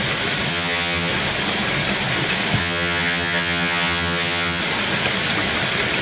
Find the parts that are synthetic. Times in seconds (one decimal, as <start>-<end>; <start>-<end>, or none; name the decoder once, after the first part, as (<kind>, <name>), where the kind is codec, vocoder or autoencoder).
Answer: 0.5-1.1 (vocoder, HiFi-GAN); 2.6-4.6

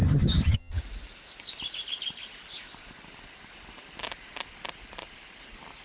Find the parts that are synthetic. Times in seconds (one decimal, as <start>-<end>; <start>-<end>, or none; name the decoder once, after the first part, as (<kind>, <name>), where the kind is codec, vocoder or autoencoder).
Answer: 0.0-0.8 (vocoder, HiFi-GAN)

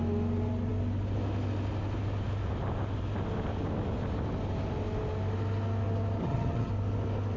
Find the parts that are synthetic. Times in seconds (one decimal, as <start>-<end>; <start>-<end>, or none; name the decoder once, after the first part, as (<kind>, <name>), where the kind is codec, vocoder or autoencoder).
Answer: 6.2-6.7 (vocoder, HiFi-GAN)